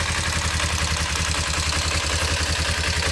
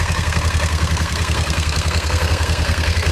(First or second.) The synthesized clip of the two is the second